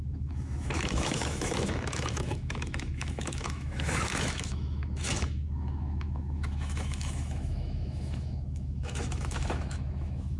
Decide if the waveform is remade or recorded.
remade